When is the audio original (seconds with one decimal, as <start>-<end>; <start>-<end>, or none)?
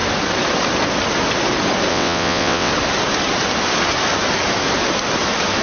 0.0-1.9; 2.7-5.6